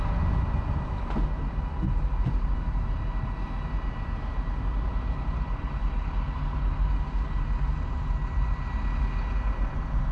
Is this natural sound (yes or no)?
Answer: yes